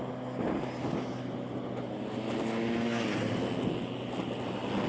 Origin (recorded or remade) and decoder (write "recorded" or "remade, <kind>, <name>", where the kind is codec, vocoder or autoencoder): recorded